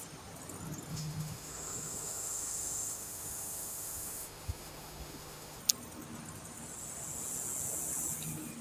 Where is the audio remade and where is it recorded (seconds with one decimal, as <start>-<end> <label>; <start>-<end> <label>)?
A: 0.0-0.9 recorded; 0.9-5.6 remade; 5.6-8.6 recorded